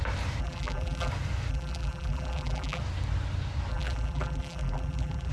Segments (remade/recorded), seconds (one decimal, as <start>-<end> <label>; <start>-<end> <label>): 0.0-0.4 recorded; 0.4-1.1 remade; 1.1-1.5 recorded; 1.5-2.8 remade; 2.8-3.7 recorded; 3.7-5.3 remade

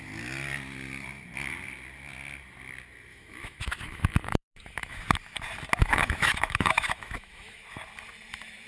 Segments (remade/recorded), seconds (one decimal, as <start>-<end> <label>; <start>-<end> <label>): 0.0-3.1 recorded; 3.1-5.0 remade; 5.0-5.8 recorded; 5.8-7.6 remade; 7.6-8.7 recorded

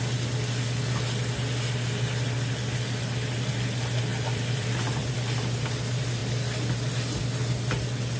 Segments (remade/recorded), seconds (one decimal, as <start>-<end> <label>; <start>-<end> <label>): 0.0-4.1 recorded; 4.1-5.1 remade; 5.1-8.2 recorded